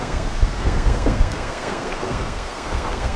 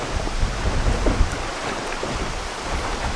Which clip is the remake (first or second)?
first